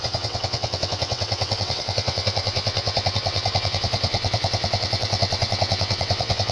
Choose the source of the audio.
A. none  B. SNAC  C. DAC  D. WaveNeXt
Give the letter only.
D